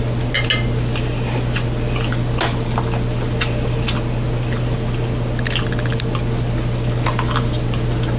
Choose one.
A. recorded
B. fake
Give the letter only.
A